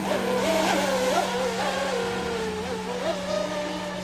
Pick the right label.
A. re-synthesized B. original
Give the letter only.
B